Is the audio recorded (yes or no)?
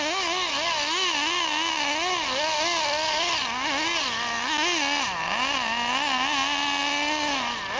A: yes